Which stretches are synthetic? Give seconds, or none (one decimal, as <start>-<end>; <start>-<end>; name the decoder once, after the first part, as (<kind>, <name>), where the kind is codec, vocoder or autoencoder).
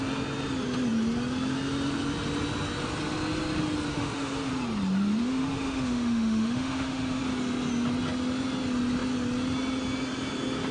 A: 3.9-4.5 (autoencoder, DAC-VAE); 5.2-7.2